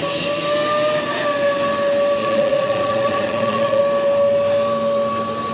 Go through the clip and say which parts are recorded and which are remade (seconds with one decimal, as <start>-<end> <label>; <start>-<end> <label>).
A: 0.0-2.2 recorded; 2.2-3.8 remade; 3.8-5.5 recorded